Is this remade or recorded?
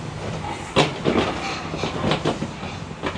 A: recorded